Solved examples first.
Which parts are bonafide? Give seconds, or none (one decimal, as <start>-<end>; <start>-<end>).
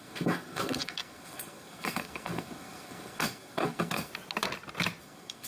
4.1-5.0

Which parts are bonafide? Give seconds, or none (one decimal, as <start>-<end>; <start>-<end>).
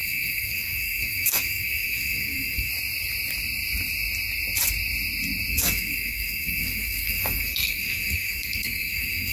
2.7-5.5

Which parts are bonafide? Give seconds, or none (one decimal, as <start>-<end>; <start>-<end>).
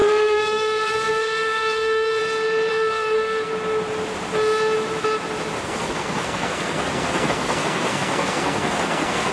2.2-2.7; 3.5-5.6